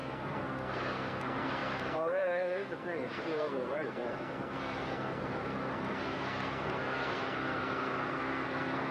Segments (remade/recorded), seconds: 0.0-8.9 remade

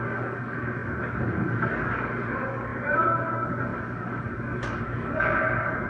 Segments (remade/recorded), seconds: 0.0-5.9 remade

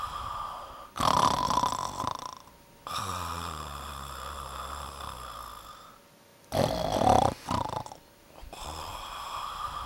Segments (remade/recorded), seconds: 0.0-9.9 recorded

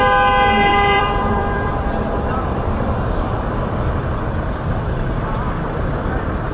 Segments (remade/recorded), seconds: 0.0-0.7 recorded; 0.7-4.6 remade; 4.6-6.5 recorded

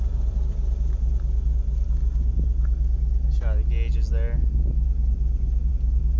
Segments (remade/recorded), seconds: 0.0-6.2 recorded